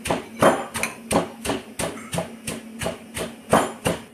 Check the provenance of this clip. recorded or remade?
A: recorded